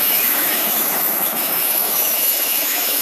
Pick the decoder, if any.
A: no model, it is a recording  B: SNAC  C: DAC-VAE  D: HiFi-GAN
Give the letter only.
C